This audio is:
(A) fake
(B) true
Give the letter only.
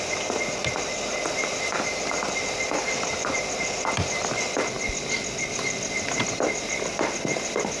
B